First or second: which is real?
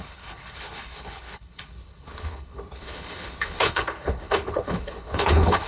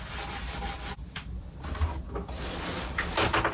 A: second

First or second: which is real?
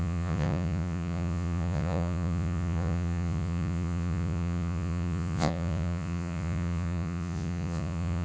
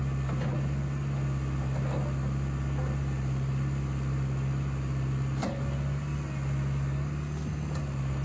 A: second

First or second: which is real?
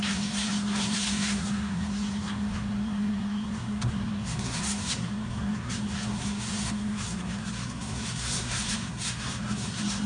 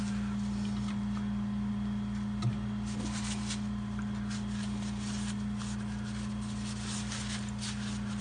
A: second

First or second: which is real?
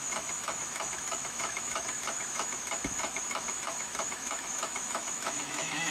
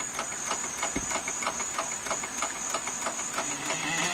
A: second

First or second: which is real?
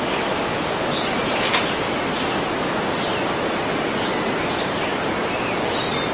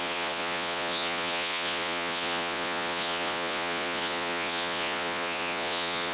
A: first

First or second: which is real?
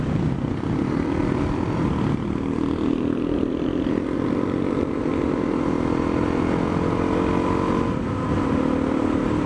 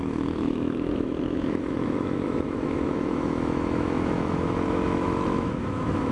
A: first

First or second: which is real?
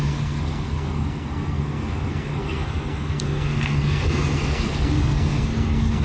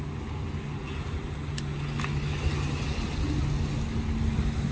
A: second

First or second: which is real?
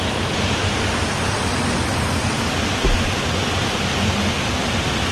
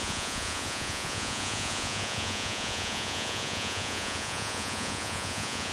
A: first